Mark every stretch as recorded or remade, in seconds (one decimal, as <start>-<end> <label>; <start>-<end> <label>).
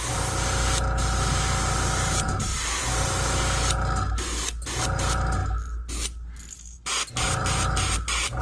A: 0.0-8.4 recorded